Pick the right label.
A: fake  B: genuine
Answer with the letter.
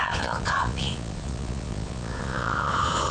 A